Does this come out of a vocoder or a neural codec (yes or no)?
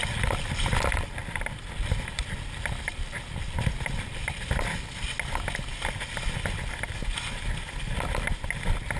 no